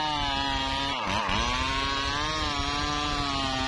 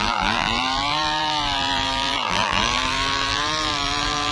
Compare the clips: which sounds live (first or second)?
first